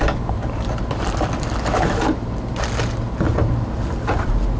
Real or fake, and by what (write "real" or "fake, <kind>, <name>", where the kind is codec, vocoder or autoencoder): real